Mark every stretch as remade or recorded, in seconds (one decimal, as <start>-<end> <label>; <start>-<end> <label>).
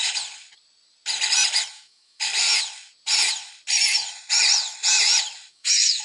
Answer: 0.0-1.7 recorded; 1.7-2.3 remade; 2.3-5.5 recorded; 5.5-6.0 remade